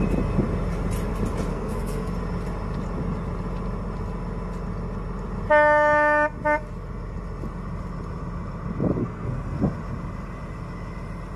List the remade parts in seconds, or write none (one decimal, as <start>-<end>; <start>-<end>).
1.5-2.1; 9.0-9.6